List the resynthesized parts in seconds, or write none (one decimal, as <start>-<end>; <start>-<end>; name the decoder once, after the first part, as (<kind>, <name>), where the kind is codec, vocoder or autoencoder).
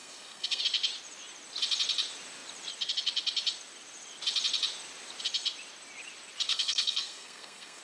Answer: 0.0-0.6 (codec, SNAC); 6.5-7.8